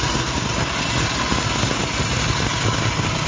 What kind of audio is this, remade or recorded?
recorded